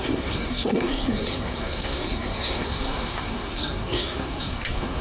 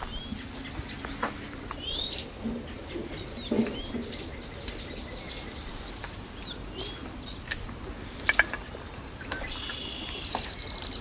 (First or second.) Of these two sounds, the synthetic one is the first